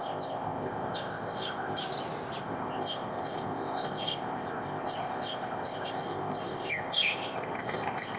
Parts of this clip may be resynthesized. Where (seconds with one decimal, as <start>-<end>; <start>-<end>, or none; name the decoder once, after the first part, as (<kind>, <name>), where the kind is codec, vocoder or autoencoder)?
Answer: 0.0-1.8 (codec, ZipCodec); 2.4-8.2